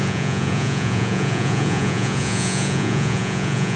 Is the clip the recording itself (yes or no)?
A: no